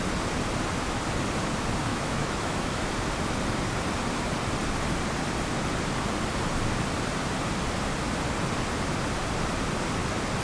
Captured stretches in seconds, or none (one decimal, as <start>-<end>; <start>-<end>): 0.0-1.9; 2.9-10.4